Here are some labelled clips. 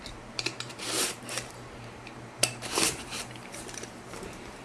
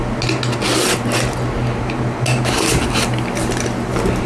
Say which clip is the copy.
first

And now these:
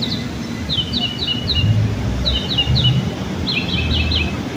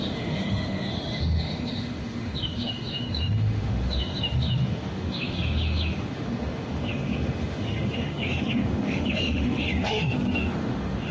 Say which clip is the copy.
second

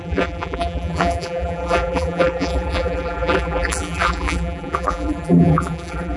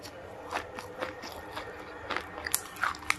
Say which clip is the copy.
first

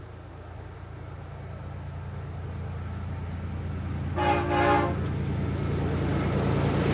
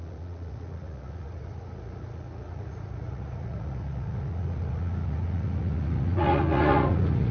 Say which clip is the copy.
second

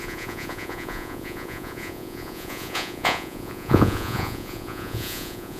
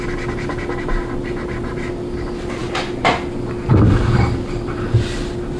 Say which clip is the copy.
first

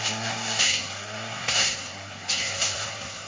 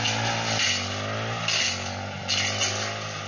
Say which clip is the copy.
first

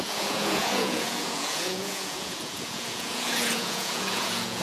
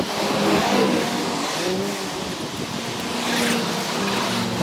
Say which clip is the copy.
first